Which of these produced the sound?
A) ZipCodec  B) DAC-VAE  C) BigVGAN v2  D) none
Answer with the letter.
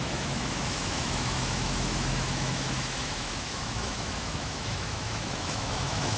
B